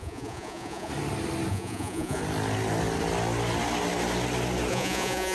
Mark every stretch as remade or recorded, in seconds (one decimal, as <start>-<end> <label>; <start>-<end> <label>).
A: 0.0-0.9 remade; 0.9-1.5 recorded; 1.5-2.2 remade; 2.2-4.7 recorded; 4.7-5.3 remade